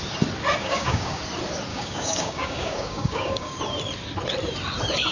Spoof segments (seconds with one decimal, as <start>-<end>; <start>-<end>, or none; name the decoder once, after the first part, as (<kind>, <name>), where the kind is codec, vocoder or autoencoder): 0.6-1.2 (codec, DAC); 1.7-3.6